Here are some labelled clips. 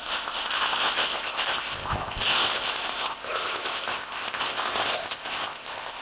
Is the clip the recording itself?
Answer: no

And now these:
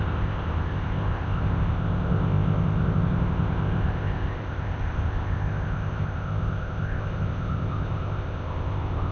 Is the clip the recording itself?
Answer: no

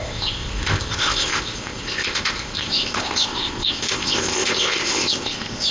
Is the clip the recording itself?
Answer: no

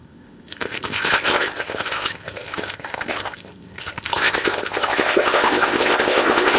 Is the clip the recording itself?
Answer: no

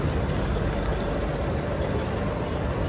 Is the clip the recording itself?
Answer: yes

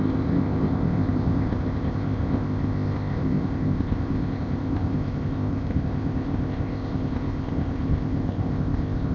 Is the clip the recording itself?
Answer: no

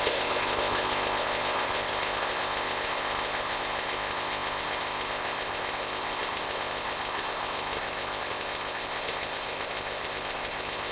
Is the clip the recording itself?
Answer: no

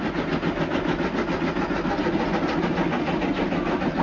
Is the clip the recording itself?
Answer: yes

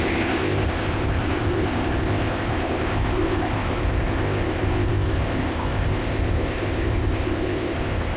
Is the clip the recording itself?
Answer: no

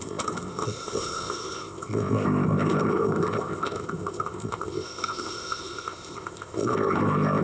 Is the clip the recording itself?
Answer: no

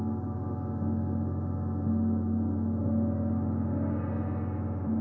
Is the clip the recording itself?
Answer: yes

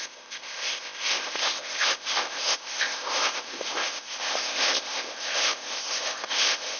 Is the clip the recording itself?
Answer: no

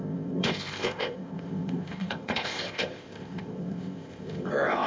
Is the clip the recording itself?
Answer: no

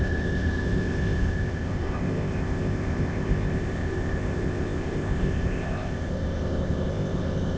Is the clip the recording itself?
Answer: no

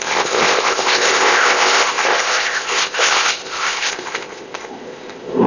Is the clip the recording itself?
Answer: no